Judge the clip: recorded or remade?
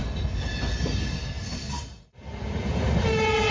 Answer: recorded